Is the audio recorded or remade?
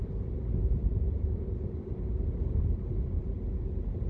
recorded